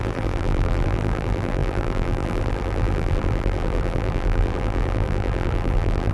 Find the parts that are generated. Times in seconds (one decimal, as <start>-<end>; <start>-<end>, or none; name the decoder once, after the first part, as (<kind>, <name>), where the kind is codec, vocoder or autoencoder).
0.0-6.1 (vocoder, BigVGAN v2)